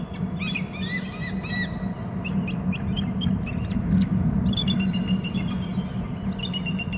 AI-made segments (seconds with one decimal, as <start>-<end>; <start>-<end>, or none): none